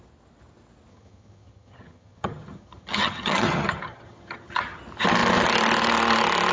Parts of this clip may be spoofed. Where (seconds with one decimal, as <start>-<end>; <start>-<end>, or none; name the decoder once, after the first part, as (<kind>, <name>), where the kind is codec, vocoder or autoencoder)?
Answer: 0.9-4.8 (vocoder, HiFi-GAN)